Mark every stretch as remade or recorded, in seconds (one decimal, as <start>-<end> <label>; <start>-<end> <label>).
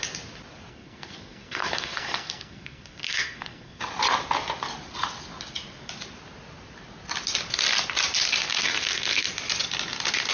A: 0.0-0.7 recorded; 0.7-3.8 remade; 3.8-8.6 recorded; 8.6-9.3 remade; 9.3-10.3 recorded